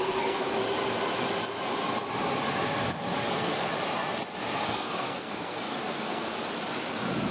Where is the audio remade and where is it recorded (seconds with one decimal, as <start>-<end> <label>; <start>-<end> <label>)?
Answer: 0.0-0.6 remade; 0.6-3.3 recorded; 3.3-3.7 remade; 3.7-4.5 recorded; 4.5-6.3 remade; 6.3-7.3 recorded